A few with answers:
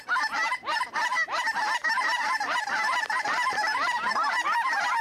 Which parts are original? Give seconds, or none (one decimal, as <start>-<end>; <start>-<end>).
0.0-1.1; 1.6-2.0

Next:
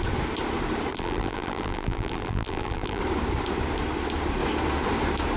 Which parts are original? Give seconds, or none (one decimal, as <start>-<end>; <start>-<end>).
0.0-0.9; 3.0-5.4

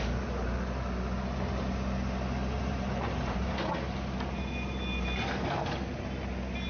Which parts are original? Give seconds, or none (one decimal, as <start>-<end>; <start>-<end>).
0.0-2.6; 3.5-6.7

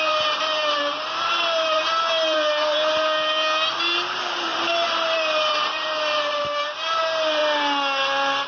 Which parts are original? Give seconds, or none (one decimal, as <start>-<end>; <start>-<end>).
7.4-8.5

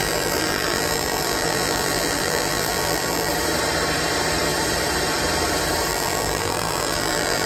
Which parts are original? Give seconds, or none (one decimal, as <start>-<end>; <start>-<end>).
3.3-5.9

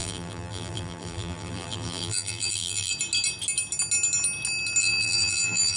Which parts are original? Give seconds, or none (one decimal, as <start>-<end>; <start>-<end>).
2.9-4.8

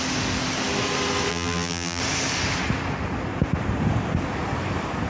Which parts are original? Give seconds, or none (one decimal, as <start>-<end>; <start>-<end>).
0.0-1.3; 2.0-5.1

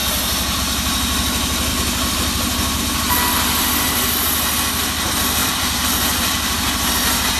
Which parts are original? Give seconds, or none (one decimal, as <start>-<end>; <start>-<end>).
0.6-1.7; 2.8-5.4; 6.9-7.4